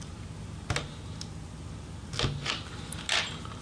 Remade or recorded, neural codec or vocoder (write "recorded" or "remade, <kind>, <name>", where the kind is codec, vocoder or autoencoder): recorded